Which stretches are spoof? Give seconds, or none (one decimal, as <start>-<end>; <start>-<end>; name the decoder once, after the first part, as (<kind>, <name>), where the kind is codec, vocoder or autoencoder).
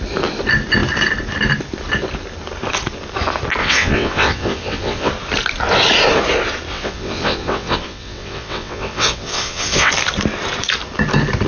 3.6-5.1 (vocoder, WaveNeXt); 6.7-9.9